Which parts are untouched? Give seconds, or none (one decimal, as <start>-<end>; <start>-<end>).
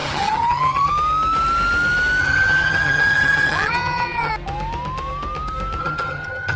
0.9-2.2; 4.3-5.8